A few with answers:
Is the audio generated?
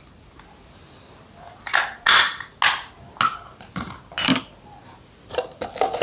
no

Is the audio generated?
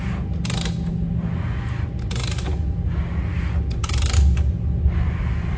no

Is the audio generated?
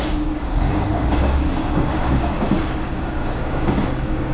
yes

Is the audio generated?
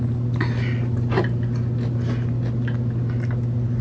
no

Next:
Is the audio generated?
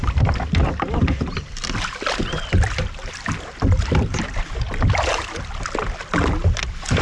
no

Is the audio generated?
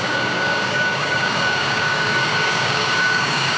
yes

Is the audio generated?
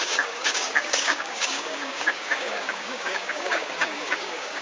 yes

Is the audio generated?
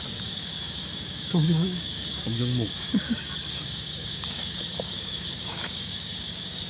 yes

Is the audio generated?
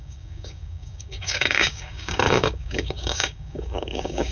yes